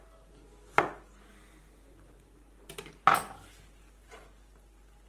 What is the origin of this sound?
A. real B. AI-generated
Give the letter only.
A